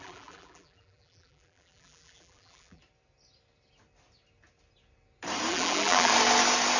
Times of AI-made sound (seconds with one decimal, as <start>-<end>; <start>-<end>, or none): 0.0-2.8; 5.5-6.1